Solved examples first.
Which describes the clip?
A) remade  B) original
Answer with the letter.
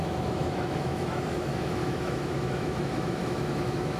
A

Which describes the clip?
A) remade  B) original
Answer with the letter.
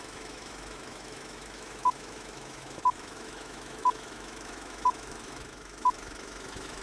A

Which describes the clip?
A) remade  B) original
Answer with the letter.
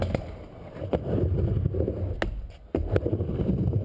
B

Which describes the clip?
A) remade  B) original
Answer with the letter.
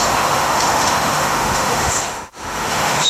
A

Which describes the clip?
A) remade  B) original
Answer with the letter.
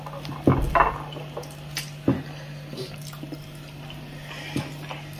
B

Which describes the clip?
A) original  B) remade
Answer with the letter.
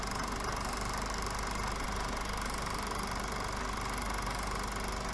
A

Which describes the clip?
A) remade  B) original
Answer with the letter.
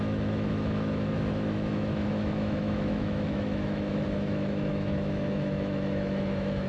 A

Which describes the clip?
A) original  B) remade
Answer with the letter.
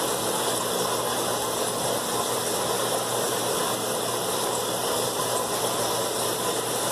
A